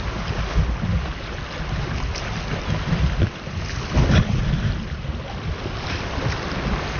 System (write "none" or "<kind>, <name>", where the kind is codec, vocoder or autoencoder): none